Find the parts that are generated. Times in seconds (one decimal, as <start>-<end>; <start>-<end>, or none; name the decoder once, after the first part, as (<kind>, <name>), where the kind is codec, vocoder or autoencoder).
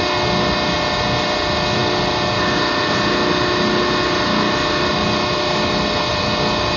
none